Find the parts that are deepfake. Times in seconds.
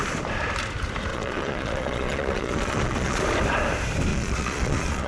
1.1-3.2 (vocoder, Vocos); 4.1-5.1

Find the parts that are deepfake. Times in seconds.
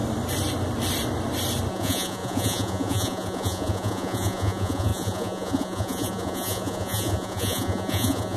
1.7-8.4 (vocoder, Vocos)